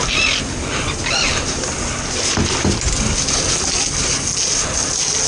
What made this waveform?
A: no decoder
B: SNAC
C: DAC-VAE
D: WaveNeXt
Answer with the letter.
A